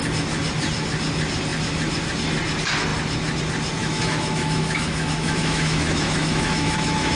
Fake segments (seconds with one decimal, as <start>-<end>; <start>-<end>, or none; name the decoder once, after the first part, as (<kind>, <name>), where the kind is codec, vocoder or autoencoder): 3.8-7.1 (autoencoder, DAC-VAE)

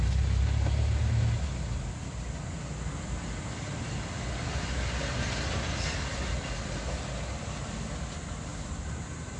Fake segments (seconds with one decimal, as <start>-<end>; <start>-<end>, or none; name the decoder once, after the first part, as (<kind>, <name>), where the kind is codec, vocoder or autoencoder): none

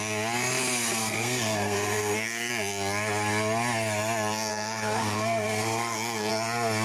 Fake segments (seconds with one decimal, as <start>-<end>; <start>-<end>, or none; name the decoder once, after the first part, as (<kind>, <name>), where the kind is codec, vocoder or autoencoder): 1.0-2.5 (codec, SNAC); 4.5-6.3

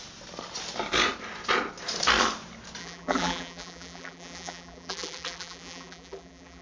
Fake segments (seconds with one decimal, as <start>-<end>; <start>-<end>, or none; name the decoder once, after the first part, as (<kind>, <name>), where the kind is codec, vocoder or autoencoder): 2.8-6.6 (vocoder, BigVGAN v2)

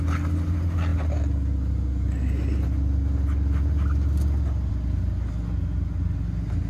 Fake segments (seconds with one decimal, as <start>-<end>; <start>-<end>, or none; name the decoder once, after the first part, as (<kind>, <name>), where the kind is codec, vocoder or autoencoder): none